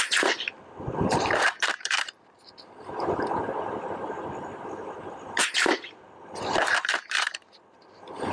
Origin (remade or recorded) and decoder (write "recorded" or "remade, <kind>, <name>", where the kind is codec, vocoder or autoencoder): remade, vocoder, BigVGAN v2